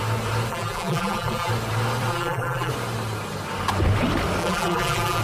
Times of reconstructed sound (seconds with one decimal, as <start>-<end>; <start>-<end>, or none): 0.5-1.5; 2.1-2.7; 4.4-5.2